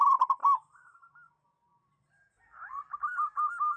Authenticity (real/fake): real